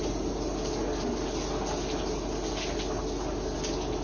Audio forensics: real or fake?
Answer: real